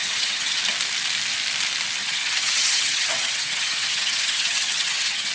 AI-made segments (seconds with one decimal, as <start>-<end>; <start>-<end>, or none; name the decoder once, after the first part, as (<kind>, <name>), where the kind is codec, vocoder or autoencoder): 0.0-0.6 (vocoder, HiFi-GAN); 2.0-5.3